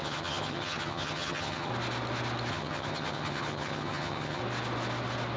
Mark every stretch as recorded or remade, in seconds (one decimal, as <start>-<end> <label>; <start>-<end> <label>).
0.0-1.7 remade; 1.7-2.5 recorded; 2.5-4.4 remade; 4.4-5.4 recorded